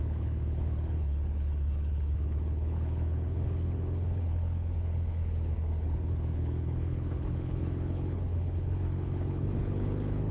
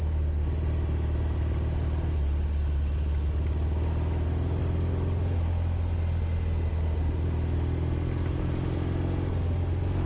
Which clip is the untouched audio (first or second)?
second